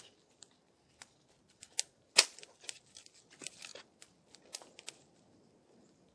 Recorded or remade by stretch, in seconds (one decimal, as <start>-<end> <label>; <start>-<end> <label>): 0.0-6.1 recorded